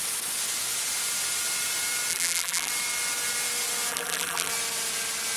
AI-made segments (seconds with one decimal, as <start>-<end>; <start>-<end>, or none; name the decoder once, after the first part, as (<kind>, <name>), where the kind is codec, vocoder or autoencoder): 2.1-2.7 (vocoder, BigVGAN v2); 3.9-4.5